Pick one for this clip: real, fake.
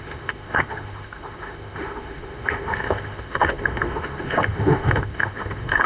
fake